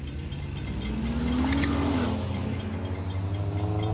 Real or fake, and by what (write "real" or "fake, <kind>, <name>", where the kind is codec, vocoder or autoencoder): real